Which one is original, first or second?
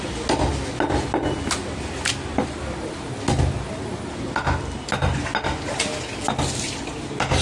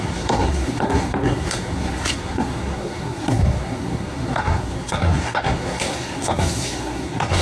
first